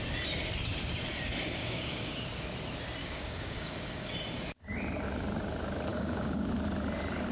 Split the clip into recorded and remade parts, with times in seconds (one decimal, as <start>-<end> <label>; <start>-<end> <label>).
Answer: 0.0-1.6 recorded; 1.6-2.1 remade; 2.1-3.0 recorded; 3.0-4.1 remade; 4.1-5.9 recorded; 5.9-6.5 remade; 6.5-7.3 recorded